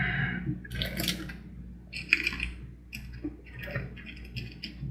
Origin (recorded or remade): recorded